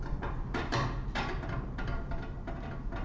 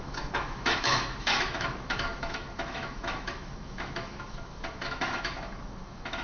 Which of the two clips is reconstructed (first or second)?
second